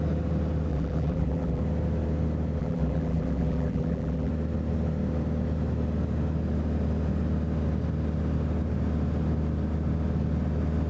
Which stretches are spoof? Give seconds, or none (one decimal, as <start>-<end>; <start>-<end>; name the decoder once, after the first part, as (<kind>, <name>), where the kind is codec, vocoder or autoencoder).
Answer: 0.7-1.6 (vocoder, BigVGAN v2); 2.6-4.3